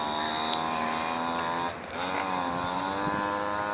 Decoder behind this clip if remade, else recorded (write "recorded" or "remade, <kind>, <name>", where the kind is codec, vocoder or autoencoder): recorded